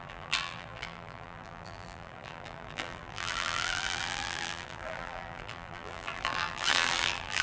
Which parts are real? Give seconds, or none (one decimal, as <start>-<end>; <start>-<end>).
none